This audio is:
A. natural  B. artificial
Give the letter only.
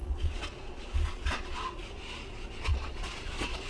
B